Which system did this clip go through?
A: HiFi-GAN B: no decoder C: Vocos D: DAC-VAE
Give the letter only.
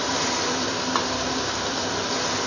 B